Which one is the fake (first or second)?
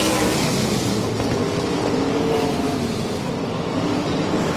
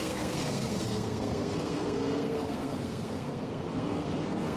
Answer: second